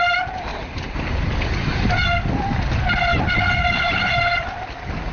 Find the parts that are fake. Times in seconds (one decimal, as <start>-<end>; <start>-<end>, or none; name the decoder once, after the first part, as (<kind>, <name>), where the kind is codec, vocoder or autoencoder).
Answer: 3.1-4.2 (vocoder, Vocos)